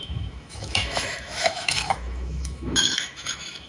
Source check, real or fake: fake